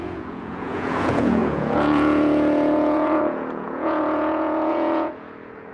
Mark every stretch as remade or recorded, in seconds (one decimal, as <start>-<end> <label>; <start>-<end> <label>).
0.0-5.7 remade

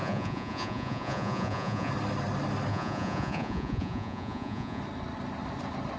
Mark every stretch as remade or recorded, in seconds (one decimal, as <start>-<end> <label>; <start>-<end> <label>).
0.0-1.9 remade; 1.9-2.7 recorded; 2.7-4.8 remade; 4.8-6.0 recorded

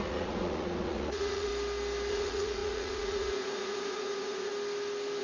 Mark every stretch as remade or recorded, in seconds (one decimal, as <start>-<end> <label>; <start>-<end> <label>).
0.0-1.5 remade; 1.5-2.1 recorded; 2.1-4.5 remade; 4.5-5.2 recorded